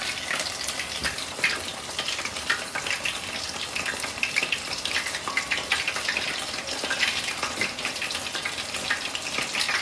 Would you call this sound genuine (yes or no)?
yes